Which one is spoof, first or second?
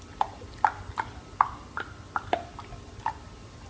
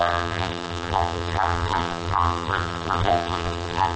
second